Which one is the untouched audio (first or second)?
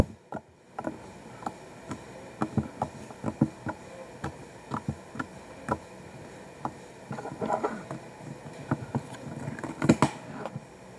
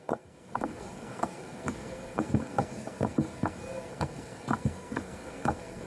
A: first